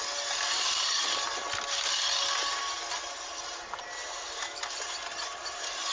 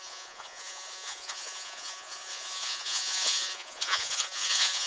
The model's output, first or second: second